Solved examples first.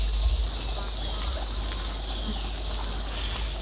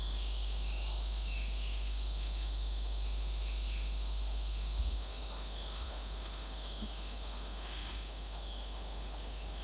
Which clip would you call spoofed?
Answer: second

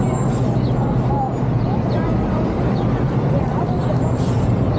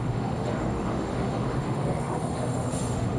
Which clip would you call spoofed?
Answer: second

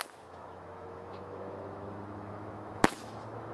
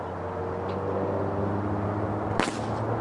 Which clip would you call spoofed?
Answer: first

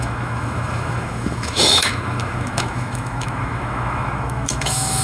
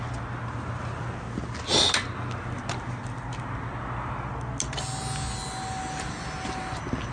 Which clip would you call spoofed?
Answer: first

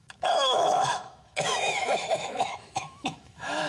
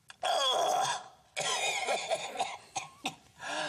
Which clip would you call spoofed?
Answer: first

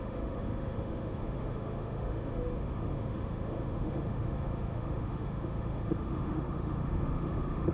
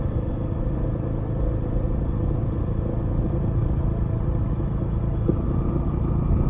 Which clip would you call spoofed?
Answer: first